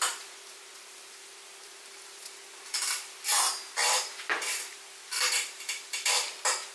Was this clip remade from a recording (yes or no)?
yes